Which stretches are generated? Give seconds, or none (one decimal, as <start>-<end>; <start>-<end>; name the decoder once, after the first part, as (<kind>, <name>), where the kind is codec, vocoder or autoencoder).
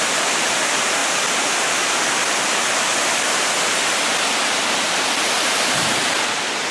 none